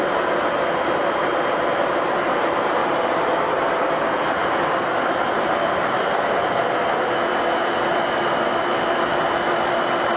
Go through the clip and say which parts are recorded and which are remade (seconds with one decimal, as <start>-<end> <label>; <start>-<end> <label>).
0.0-10.2 remade